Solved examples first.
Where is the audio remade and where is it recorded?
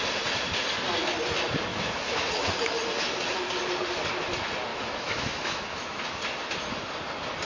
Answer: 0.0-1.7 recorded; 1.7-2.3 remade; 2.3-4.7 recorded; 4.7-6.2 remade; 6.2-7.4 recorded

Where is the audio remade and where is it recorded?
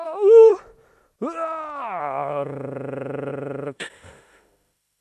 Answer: 0.0-0.5 remade; 0.5-2.0 recorded; 2.0-5.0 remade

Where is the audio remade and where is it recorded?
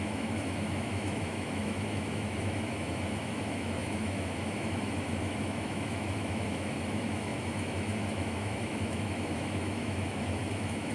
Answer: 0.0-10.9 remade